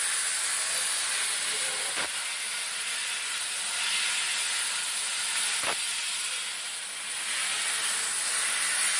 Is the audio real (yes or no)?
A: yes